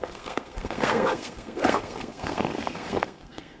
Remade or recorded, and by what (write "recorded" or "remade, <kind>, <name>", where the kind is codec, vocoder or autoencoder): remade, codec, SNAC